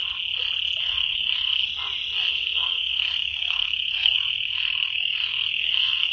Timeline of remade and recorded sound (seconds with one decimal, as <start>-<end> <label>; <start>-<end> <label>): 0.0-0.8 recorded; 0.8-1.6 remade; 1.6-2.3 recorded; 2.3-6.1 remade